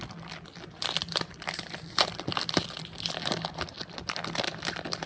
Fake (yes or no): no